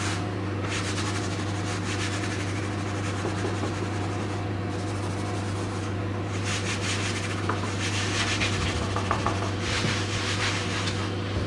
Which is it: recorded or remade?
recorded